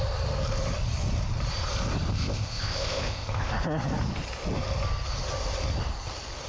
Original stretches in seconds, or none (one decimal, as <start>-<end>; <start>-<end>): 0.0-2.1; 3.5-6.5